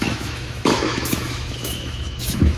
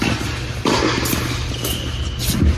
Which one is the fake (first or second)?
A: first